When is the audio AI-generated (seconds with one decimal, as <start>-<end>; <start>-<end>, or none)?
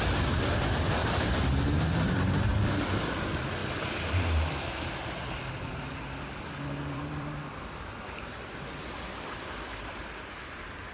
0.0-1.0; 1.8-10.9